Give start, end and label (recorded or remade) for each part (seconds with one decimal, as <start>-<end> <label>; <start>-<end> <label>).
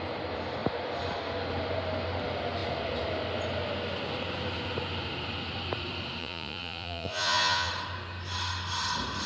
0.0-6.2 recorded; 6.2-7.7 remade; 7.7-9.3 recorded